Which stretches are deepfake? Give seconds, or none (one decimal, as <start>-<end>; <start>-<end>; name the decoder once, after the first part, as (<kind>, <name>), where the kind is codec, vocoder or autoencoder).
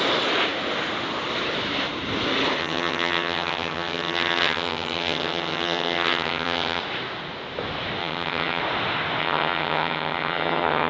2.6-6.8 (vocoder, HiFi-GAN); 8.0-8.6; 9.2-10.9